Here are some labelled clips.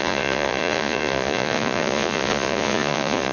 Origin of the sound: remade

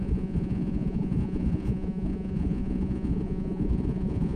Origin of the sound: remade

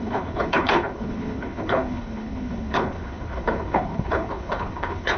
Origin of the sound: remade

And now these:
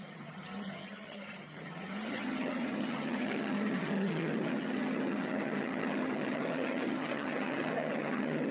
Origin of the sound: remade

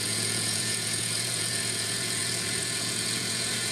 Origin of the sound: remade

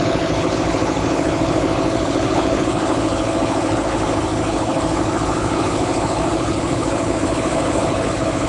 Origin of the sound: remade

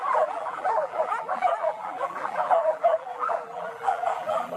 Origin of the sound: remade